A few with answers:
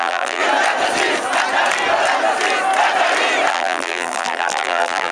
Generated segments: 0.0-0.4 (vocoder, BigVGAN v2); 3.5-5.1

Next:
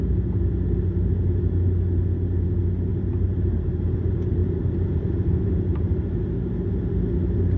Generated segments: 2.9-3.8 (vocoder, BigVGAN v2); 4.4-6.2

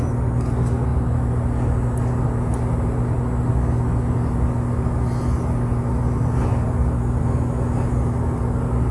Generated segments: 6.5-7.2 (vocoder, BigVGAN v2)

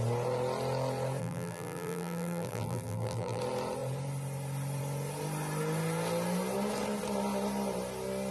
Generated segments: 1.2-3.4 (vocoder, BigVGAN v2)